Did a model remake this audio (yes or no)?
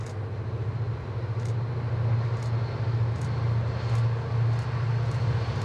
no